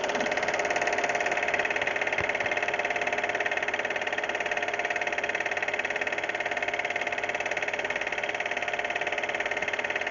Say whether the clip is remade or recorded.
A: recorded